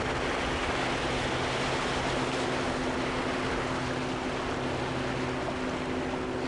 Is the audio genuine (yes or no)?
yes